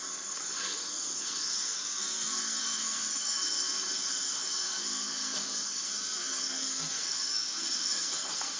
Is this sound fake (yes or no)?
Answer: yes